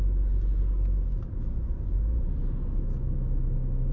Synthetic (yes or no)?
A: no